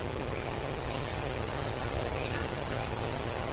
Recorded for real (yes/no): no